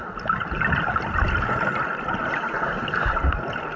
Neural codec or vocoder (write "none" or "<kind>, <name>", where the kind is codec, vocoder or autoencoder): none